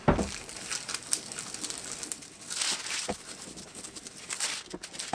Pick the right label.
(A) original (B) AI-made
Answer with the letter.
A